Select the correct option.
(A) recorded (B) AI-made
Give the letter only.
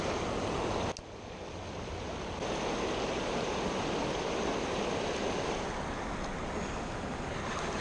A